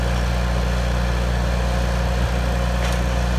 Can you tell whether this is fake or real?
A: real